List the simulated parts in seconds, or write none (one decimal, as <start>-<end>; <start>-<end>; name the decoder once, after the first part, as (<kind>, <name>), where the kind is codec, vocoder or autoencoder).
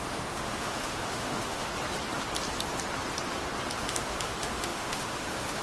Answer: 0.0-1.7 (autoencoder, DAC-VAE); 3.8-5.6